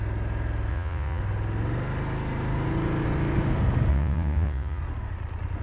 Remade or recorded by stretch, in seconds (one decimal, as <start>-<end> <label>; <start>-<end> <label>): 0.0-0.7 recorded; 0.7-1.2 remade; 1.2-3.9 recorded; 3.9-4.8 remade; 4.8-5.6 recorded